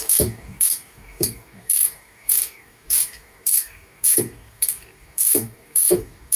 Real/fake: fake